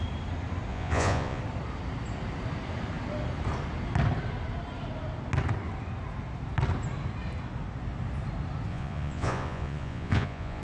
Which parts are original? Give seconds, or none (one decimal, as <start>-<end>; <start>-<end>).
0.0-0.7; 1.4-8.7